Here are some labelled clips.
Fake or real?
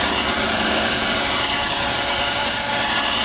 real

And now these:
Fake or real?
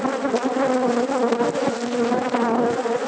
real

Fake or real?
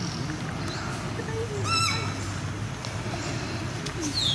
real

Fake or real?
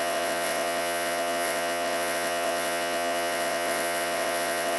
fake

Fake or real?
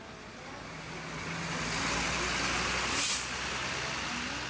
real